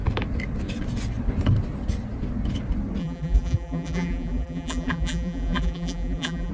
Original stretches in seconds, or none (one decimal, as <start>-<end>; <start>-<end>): 0.0-3.0